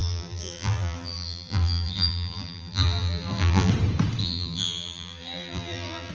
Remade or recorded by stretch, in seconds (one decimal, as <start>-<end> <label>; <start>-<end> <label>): 0.0-3.7 remade; 3.7-4.2 recorded; 4.2-6.1 remade